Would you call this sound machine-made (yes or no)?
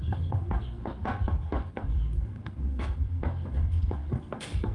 yes